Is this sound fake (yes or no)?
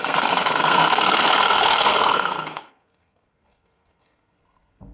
yes